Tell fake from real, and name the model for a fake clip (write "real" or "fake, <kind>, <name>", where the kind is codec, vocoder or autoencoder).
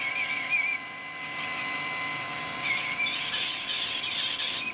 real